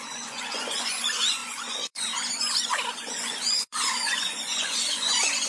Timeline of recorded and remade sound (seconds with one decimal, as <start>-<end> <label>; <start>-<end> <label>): 0.0-5.5 remade